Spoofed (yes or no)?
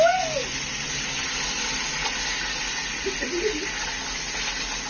no